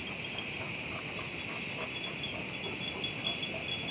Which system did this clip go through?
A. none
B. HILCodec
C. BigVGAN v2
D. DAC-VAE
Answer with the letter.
A